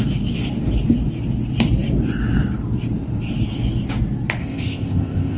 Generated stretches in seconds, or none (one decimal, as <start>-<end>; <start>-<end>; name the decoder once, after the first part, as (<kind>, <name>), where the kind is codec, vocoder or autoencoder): 4.4-5.4 (codec, ZipCodec)